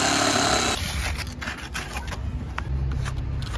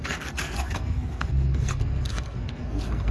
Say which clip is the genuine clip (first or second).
first